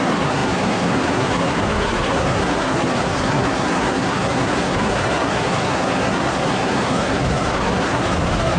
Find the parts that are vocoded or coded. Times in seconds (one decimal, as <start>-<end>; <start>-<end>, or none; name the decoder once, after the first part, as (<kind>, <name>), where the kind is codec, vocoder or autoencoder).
0.0-8.6 (codec, SNAC)